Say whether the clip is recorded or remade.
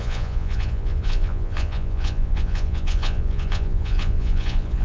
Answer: remade